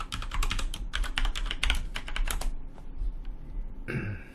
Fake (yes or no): yes